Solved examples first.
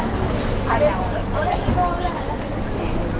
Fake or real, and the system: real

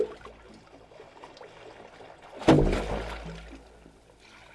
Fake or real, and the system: real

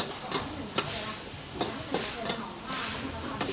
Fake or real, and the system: real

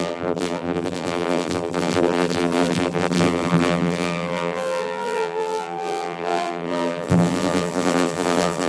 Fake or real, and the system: fake, vocoder, BigVGAN v2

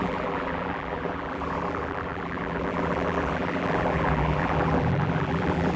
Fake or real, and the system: fake, vocoder, BigVGAN v2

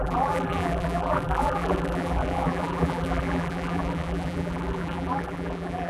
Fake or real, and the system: fake, vocoder, BigVGAN v2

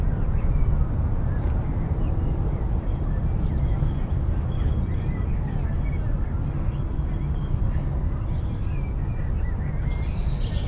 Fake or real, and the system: real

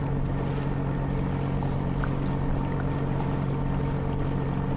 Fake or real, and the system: real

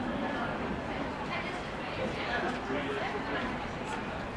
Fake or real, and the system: real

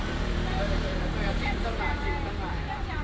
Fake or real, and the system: fake, vocoder, BigVGAN v2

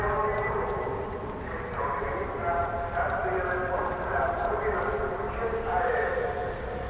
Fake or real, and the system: real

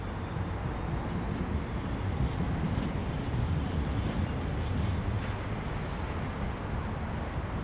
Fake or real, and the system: real